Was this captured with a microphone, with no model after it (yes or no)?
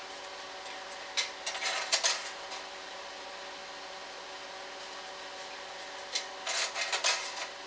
yes